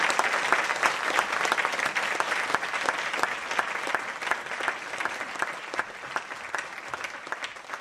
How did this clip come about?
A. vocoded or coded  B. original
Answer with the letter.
B